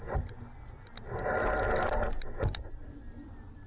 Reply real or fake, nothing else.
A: real